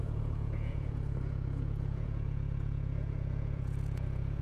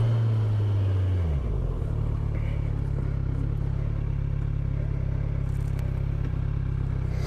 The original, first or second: second